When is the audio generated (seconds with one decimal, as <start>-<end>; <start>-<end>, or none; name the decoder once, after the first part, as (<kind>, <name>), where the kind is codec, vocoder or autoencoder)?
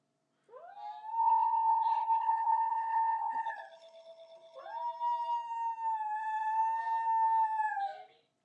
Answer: 1.2-4.6 (codec, HILCodec)